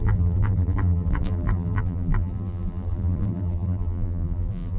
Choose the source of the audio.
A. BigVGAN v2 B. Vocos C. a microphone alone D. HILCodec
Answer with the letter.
A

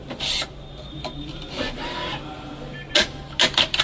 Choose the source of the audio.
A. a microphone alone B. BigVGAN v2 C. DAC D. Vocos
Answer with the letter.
A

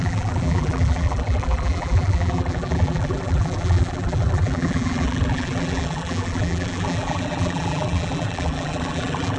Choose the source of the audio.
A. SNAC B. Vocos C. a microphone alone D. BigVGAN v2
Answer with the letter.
D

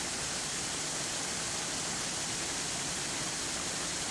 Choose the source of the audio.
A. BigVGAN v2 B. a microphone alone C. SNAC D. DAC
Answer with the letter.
A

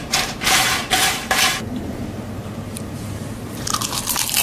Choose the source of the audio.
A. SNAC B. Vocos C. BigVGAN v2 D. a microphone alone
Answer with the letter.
C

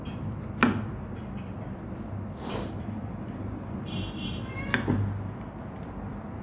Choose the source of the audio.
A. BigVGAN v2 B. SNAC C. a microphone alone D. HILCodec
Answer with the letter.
A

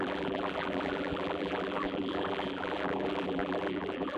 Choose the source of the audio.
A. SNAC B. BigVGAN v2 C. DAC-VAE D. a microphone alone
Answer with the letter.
B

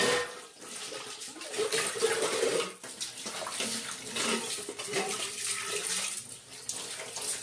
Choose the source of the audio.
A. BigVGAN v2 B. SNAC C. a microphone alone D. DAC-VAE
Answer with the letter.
C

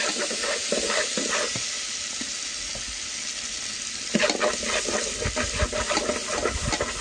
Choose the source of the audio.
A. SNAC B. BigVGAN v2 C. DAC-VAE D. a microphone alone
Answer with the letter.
D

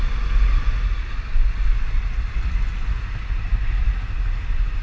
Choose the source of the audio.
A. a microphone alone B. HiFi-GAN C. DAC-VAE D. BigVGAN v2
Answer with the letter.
A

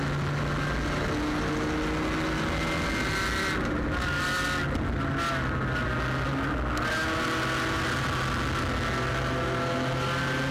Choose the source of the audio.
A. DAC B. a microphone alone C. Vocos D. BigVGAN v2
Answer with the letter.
B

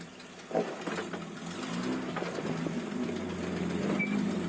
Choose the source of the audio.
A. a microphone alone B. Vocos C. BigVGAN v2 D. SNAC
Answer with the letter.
A